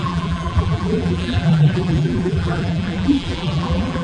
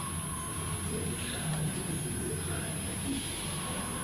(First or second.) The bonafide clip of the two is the second